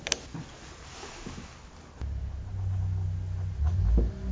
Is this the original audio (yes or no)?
yes